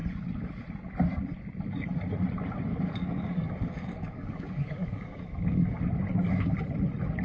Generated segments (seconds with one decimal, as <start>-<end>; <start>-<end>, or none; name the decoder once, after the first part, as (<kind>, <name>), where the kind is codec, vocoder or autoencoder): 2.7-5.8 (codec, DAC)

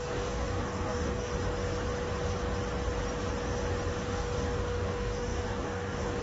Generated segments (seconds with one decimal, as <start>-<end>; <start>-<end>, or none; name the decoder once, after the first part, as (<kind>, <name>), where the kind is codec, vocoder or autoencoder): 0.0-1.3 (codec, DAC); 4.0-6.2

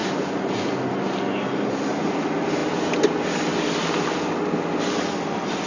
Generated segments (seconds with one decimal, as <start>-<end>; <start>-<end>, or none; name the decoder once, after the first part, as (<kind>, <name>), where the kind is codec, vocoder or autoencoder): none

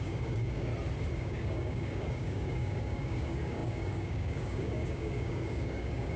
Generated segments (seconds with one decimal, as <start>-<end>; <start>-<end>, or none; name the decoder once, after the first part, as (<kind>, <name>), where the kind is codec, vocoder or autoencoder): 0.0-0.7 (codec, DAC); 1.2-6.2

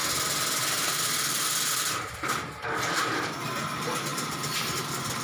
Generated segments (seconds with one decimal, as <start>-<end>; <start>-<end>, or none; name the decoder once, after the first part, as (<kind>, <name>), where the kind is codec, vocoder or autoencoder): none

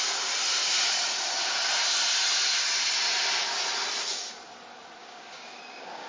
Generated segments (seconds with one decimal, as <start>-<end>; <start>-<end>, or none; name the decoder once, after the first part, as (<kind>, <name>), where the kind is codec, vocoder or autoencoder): 5.0-6.1 (codec, DAC)

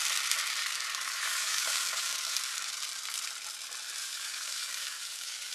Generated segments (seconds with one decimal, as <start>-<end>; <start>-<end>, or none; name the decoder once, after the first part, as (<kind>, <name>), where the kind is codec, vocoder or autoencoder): 0.6-2.7 (codec, DAC); 4.0-5.5